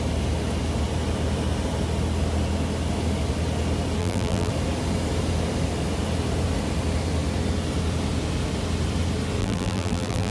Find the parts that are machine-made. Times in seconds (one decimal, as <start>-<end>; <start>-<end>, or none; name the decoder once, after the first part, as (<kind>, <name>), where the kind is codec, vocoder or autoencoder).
4.0-4.5 (vocoder, BigVGAN v2); 9.4-10.3

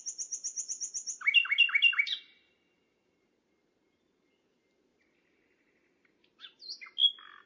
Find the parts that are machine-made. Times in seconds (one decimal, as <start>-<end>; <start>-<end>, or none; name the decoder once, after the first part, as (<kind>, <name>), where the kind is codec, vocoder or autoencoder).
none

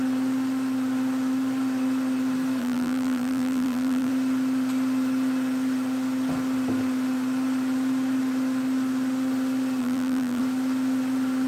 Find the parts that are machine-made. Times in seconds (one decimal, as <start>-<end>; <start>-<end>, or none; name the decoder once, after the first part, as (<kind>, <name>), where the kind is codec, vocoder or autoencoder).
2.6-4.1 (vocoder, BigVGAN v2); 9.8-10.4

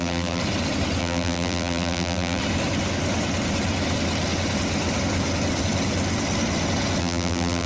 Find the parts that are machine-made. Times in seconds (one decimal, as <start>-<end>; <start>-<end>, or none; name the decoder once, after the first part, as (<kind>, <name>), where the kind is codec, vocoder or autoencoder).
0.0-0.4 (vocoder, BigVGAN v2); 1.0-2.4; 7.0-7.7

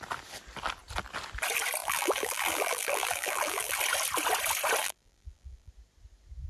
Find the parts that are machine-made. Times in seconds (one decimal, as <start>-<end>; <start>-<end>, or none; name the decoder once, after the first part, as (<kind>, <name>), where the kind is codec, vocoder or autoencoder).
1.8-3.8 (vocoder, BigVGAN v2); 4.8-5.7